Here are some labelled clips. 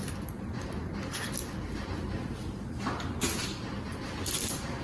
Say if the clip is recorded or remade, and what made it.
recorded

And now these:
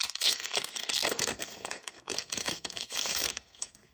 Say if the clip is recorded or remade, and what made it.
remade, codec, SNAC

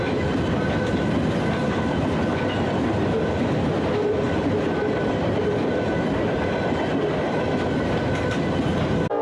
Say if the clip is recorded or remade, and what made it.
recorded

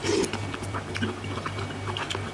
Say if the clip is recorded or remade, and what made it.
recorded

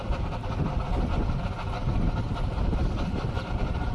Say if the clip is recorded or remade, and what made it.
recorded